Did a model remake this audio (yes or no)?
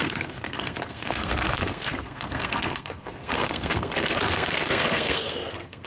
yes